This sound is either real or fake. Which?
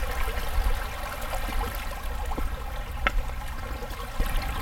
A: real